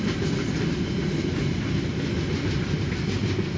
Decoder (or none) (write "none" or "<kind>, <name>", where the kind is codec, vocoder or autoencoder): none